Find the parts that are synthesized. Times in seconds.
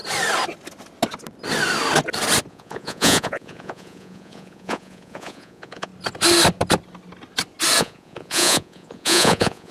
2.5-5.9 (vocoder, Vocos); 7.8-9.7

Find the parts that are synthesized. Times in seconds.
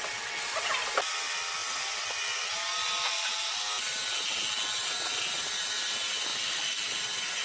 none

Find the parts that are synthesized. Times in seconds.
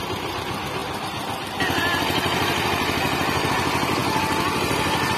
none